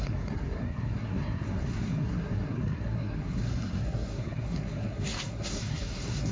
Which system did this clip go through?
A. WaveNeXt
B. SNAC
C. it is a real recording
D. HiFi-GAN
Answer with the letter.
B